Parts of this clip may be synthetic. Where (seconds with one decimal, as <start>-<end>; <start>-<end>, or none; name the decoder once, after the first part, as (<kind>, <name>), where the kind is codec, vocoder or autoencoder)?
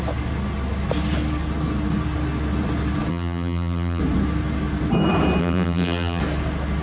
3.1-4.0 (vocoder, BigVGAN v2); 5.4-6.2